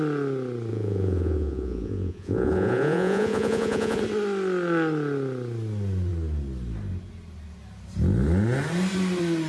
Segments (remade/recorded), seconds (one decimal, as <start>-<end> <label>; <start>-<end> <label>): 0.0-0.7 recorded; 0.7-4.0 remade; 4.0-9.5 recorded

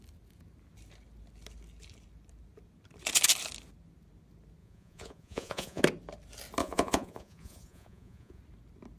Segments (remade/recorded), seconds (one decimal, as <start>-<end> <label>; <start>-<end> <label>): 0.0-4.6 recorded; 4.6-5.8 remade; 5.8-6.6 recorded; 6.6-8.4 remade; 8.4-9.0 recorded